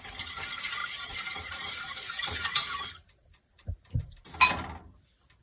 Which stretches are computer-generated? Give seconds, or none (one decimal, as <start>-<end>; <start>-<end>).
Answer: 0.8-4.0